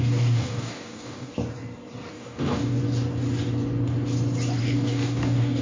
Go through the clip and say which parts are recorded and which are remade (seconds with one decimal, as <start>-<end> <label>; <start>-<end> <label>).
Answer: 0.0-1.3 remade; 1.3-2.1 recorded; 2.1-2.8 remade; 2.8-4.6 recorded; 4.6-5.6 remade